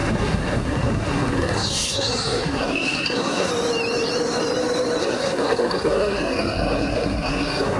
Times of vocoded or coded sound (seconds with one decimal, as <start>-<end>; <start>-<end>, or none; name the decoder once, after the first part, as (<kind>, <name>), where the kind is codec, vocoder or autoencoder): 0.0-3.5 (codec, SNAC); 5.0-7.8